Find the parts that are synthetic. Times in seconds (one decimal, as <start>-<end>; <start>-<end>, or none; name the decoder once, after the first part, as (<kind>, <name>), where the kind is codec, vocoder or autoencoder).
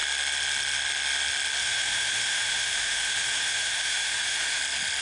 1.6-4.6 (autoencoder, DAC-VAE)